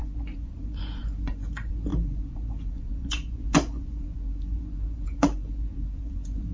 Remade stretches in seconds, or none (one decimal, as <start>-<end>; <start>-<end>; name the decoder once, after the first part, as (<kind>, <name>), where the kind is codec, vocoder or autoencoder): 0.0-6.5 (vocoder, Vocos)